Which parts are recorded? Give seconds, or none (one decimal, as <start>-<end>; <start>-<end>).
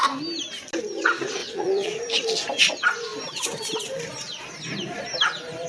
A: 0.0-1.4; 2.0-5.7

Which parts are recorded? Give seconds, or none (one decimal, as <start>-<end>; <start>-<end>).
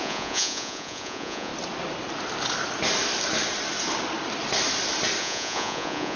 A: 1.5-5.2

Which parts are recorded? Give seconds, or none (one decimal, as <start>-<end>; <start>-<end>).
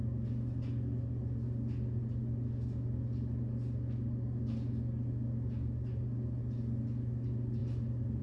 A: 0.0-8.2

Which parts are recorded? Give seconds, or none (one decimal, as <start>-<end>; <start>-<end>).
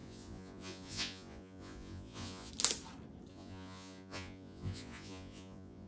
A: 2.5-3.3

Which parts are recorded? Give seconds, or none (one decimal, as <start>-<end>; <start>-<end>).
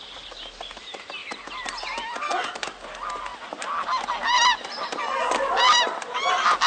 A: 0.0-6.7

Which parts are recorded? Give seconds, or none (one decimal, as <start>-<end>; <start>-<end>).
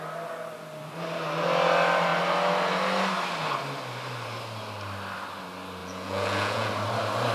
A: 0.0-5.8; 6.7-7.3